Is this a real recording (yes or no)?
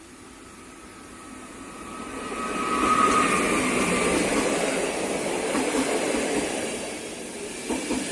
yes